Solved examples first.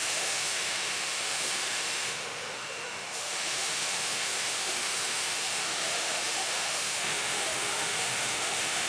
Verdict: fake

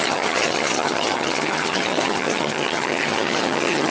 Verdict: fake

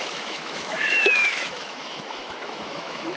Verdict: fake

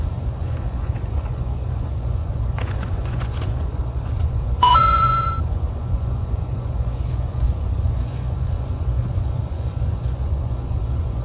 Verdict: fake